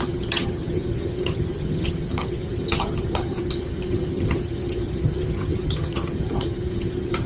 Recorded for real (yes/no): no